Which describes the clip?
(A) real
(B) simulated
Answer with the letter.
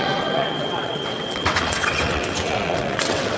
B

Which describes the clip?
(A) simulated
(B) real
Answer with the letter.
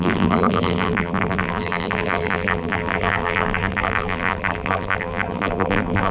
A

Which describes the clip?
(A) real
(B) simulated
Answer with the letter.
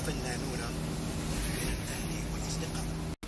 A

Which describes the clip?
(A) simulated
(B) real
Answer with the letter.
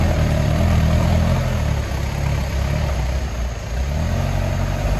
B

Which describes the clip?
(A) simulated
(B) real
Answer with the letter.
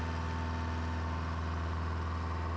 B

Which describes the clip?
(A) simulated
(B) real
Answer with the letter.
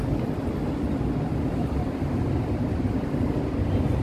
B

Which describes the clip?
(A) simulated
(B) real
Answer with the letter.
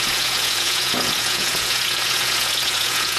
A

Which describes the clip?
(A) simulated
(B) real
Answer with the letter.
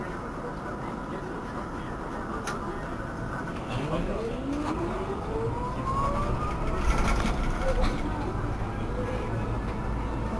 B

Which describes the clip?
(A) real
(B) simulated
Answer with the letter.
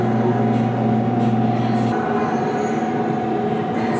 A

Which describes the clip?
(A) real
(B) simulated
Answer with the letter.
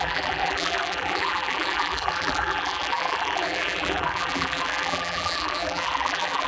B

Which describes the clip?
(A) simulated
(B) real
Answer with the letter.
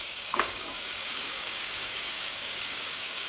A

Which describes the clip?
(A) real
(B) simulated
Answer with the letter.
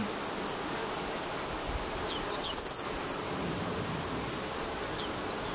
A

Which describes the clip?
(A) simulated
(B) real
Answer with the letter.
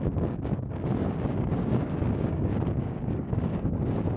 A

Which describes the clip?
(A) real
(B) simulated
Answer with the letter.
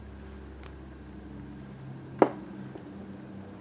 A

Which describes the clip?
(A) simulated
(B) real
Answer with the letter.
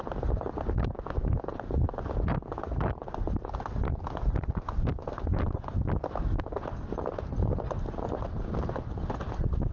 B